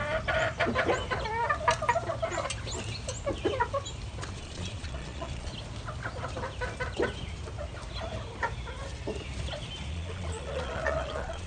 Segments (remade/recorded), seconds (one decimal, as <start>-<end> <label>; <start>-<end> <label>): 0.0-4.3 recorded; 4.3-5.5 remade; 5.5-9.9 recorded; 9.9-11.5 remade